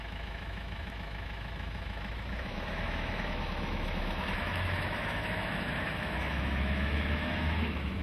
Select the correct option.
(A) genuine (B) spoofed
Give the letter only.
B